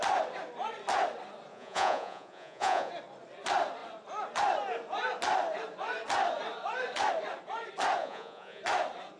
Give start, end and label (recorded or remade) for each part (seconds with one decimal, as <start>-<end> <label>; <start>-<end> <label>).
0.0-1.5 recorded; 1.5-2.9 remade; 2.9-8.0 recorded; 8.0-8.6 remade; 8.6-9.2 recorded